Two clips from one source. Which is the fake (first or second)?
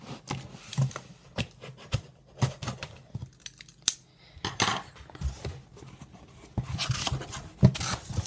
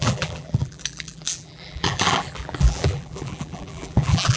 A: second